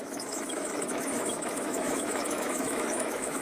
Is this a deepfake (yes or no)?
yes